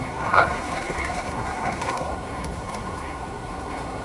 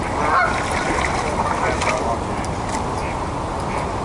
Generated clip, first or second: first